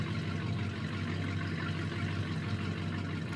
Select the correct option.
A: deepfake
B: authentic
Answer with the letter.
B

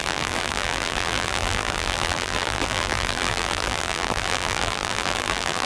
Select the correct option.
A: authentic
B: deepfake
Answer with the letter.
B